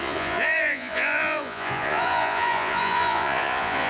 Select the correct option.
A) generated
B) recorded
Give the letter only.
A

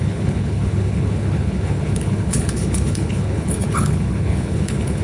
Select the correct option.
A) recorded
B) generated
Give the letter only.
B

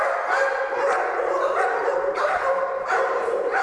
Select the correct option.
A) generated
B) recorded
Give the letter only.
B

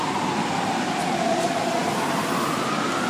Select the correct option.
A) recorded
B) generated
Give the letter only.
A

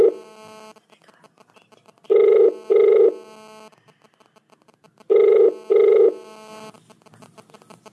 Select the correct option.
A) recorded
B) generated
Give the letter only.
A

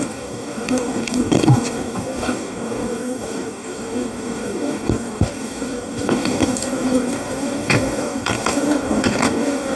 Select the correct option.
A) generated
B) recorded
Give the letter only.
A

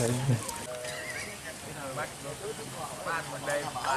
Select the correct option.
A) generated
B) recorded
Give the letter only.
B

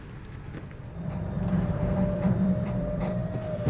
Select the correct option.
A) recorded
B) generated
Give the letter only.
B